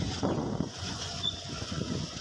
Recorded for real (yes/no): no